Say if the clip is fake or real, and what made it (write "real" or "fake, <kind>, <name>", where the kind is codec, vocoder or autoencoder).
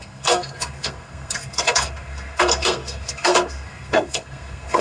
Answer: fake, codec, SNAC